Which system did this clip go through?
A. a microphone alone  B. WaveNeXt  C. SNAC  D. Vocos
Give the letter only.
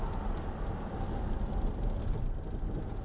A